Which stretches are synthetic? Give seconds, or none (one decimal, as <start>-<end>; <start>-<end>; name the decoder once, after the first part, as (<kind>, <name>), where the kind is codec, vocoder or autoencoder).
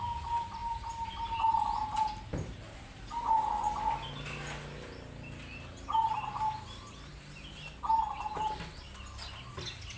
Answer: 0.6-1.4 (vocoder, BigVGAN v2); 1.9-3.4